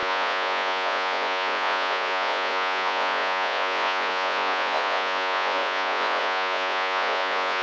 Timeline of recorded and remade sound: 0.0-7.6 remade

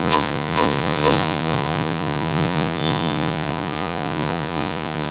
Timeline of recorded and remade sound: 0.0-5.1 remade

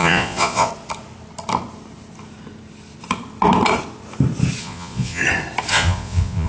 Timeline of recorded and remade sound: 0.0-0.7 remade; 0.7-4.6 recorded; 4.6-5.2 remade; 5.2-5.7 recorded; 5.7-6.5 remade

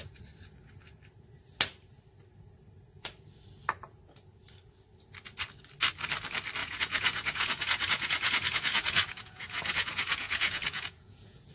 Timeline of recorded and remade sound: 0.0-6.6 recorded; 6.6-11.5 remade

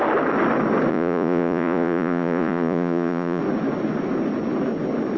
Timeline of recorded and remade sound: 0.0-0.9 recorded; 0.9-3.4 remade; 3.4-5.2 recorded

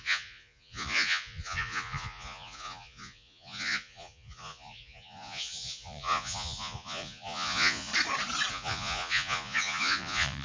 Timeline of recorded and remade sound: 0.0-7.9 remade; 7.9-8.5 recorded; 8.5-10.4 remade

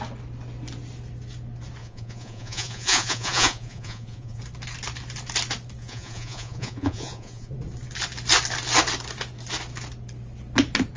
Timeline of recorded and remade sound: 0.0-1.8 recorded; 1.8-4.4 remade; 4.4-5.8 recorded; 5.8-7.5 remade; 7.5-11.0 recorded